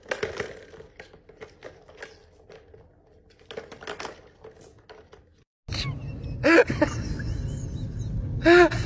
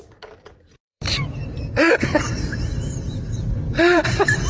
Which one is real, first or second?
first